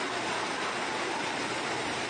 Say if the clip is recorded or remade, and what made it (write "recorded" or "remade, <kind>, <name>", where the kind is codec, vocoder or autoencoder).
remade, vocoder, BigVGAN v2